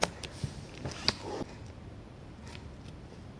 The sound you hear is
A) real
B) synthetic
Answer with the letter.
A